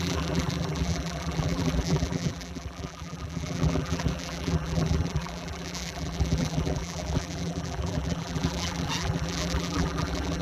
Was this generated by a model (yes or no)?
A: yes